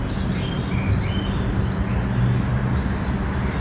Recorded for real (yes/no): yes